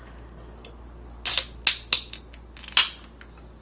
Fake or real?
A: real